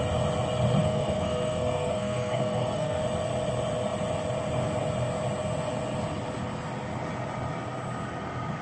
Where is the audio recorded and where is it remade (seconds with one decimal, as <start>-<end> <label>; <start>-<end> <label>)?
0.0-0.8 recorded; 0.8-3.0 remade; 3.0-8.6 recorded